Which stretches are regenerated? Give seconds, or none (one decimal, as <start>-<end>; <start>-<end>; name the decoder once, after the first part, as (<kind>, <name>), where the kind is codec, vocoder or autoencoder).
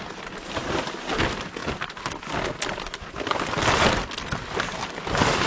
none